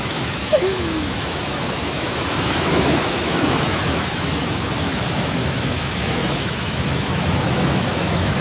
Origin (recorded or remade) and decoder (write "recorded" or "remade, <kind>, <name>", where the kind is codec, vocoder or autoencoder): remade, autoencoder, DAC-VAE